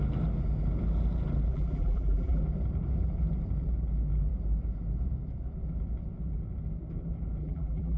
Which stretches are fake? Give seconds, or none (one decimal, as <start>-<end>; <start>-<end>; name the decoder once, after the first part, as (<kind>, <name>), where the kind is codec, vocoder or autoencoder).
1.5-2.4 (vocoder, BigVGAN v2); 7.4-8.0